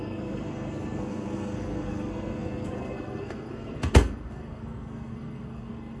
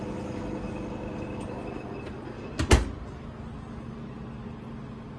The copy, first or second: first